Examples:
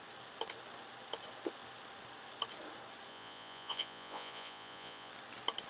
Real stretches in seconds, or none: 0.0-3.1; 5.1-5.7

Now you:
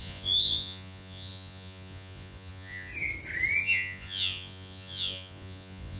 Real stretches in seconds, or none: 2.9-3.6

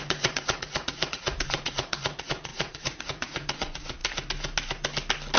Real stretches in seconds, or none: 4.0-5.4

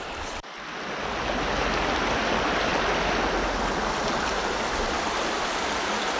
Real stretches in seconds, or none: 0.0-6.2

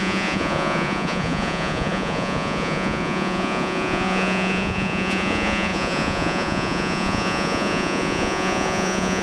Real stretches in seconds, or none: none